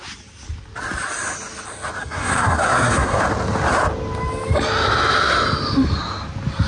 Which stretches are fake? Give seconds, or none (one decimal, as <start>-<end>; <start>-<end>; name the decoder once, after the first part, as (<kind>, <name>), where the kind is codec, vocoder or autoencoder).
2.0-3.2 (codec, SNAC)